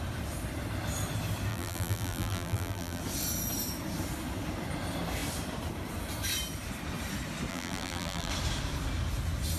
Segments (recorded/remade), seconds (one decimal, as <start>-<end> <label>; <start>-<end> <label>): 0.0-1.5 recorded; 1.5-3.0 remade; 3.0-7.5 recorded; 7.5-8.3 remade; 8.3-9.6 recorded